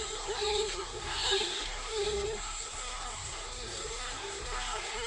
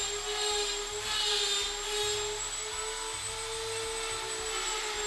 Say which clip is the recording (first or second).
second